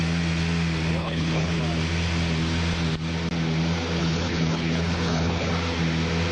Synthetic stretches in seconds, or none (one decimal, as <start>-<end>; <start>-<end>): 0.9-1.6; 4.0-5.5